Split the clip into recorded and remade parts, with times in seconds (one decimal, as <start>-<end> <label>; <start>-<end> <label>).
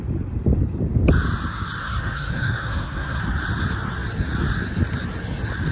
0.0-1.8 recorded; 1.8-3.2 remade; 3.2-5.7 recorded